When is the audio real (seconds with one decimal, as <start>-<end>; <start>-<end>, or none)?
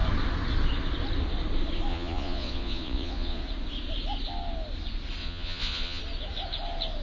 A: 0.0-1.9; 3.4-5.2; 6.0-7.0